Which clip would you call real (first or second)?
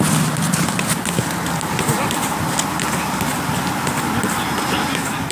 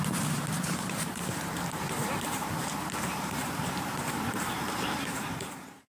first